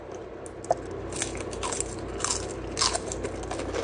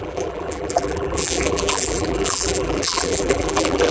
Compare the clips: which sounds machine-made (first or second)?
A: second